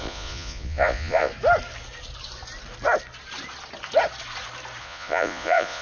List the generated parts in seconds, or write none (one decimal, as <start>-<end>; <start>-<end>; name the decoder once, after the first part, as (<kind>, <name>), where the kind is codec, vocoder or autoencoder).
0.0-1.3 (vocoder, Vocos); 4.8-5.8